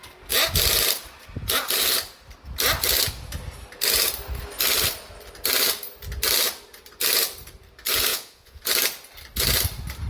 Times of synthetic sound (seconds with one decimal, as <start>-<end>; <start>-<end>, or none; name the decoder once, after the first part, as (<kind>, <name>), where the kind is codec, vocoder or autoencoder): 8.1-8.6 (vocoder, Vocos)